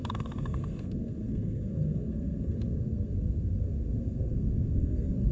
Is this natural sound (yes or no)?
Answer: no